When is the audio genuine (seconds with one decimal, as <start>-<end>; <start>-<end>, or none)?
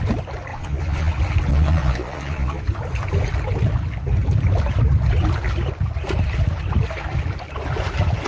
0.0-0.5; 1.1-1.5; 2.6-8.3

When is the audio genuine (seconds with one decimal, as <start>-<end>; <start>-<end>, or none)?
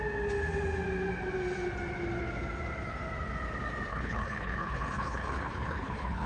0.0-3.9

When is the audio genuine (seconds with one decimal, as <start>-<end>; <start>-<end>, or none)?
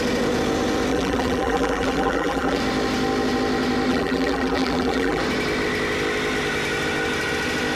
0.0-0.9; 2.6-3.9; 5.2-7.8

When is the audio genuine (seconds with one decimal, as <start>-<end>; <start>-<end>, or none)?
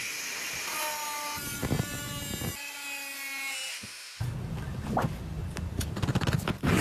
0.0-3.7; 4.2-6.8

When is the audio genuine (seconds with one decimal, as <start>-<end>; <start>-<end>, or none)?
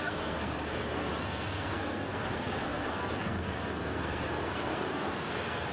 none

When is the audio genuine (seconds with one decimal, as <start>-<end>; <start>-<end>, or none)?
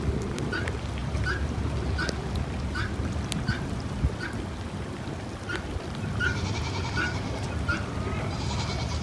0.0-1.0; 1.7-9.0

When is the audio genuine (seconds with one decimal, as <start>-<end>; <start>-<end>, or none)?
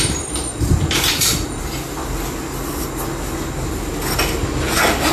0.0-5.1